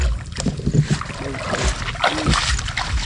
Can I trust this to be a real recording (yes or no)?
yes